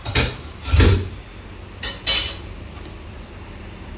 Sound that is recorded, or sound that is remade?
recorded